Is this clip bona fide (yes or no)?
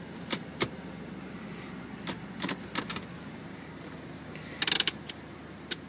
yes